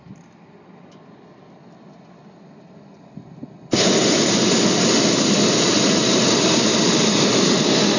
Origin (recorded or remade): recorded